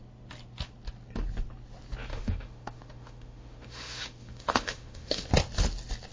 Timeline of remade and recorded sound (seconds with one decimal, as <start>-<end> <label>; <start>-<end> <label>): 0.0-2.1 recorded; 2.1-5.3 remade; 5.3-6.1 recorded